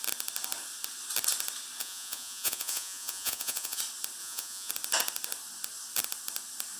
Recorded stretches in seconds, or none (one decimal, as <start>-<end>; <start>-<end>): 0.0-1.8; 3.8-4.2; 4.7-6.8